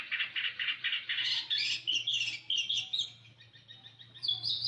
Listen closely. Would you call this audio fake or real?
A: real